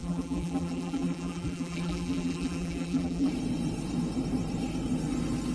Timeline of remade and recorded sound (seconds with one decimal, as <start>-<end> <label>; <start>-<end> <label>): 0.0-3.3 remade; 3.3-5.5 recorded